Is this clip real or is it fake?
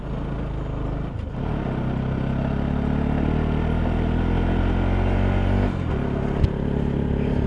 real